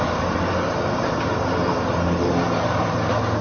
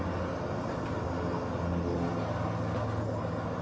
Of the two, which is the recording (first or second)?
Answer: second